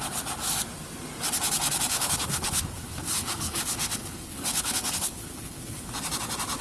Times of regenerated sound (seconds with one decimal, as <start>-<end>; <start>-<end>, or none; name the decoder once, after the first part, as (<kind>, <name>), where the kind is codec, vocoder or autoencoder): 1.9-5.9 (codec, HILCodec)